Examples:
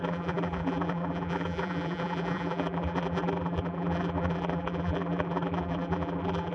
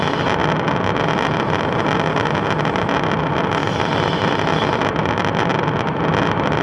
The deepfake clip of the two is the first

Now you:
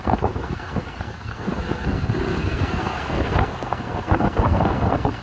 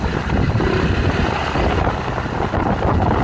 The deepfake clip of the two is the first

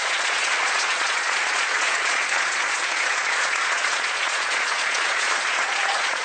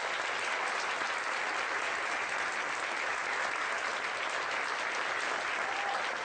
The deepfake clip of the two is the first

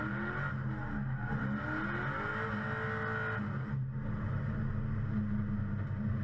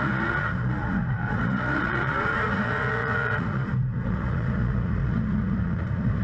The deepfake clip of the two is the second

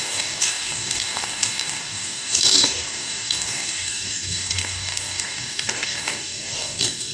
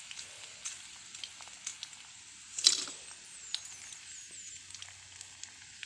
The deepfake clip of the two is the first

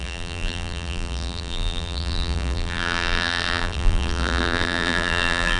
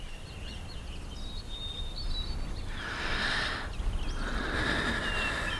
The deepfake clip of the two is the first